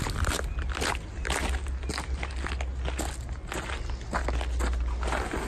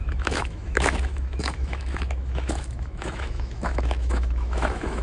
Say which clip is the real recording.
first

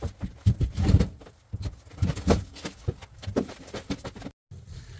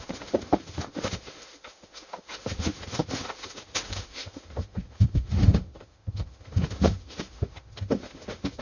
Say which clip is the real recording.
first